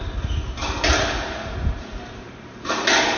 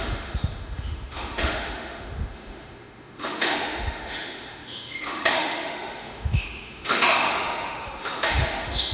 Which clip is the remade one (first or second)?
second